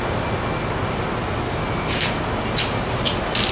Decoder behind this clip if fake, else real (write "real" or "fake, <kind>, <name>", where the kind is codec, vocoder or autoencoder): real